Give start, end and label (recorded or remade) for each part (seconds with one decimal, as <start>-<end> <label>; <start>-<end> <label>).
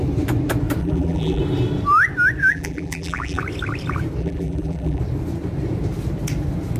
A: 0.0-0.8 recorded; 0.8-1.4 remade; 1.4-2.4 recorded; 2.4-3.4 remade; 3.4-4.2 recorded; 4.2-5.0 remade; 5.0-6.8 recorded